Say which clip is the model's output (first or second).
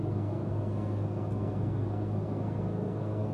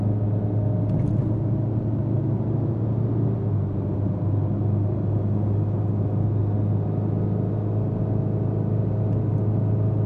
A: first